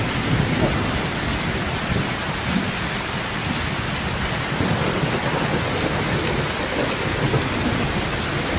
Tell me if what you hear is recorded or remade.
recorded